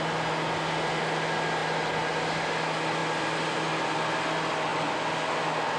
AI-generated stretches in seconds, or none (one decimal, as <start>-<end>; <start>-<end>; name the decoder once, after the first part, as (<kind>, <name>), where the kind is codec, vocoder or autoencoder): none